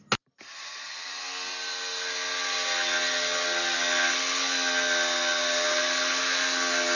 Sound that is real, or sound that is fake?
real